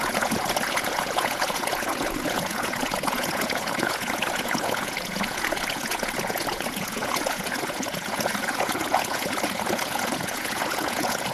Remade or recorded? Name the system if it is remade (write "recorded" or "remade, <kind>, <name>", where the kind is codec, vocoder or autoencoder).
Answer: remade, vocoder, Vocos